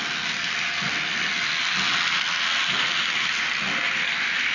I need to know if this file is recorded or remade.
recorded